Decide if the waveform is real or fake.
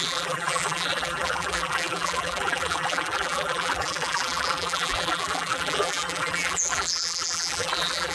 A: fake